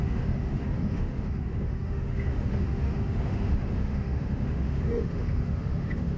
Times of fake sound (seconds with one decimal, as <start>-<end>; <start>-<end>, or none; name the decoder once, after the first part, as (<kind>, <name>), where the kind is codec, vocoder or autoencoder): 0.0-6.2 (autoencoder, DAC-VAE)